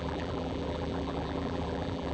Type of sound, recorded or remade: remade